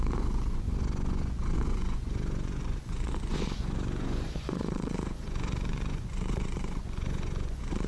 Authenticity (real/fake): fake